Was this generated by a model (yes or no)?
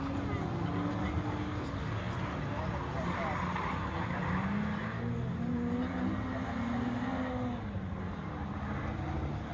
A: no